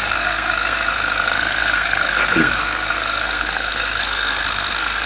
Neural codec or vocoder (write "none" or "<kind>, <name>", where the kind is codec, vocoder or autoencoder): codec, SNAC